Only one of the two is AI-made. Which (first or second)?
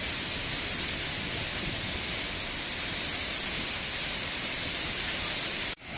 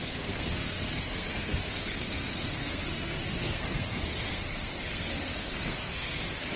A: second